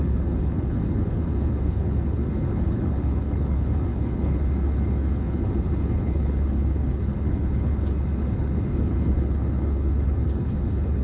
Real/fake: fake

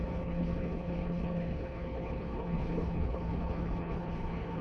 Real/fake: fake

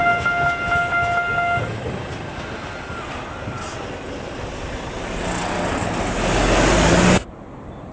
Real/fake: real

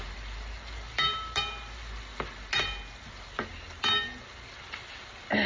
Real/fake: real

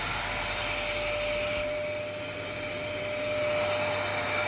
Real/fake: real